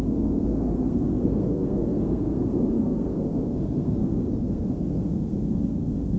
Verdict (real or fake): fake